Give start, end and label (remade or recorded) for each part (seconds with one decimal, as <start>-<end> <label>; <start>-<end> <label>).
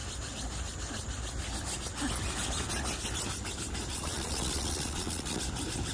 0.0-3.9 recorded; 3.9-5.4 remade; 5.4-5.9 recorded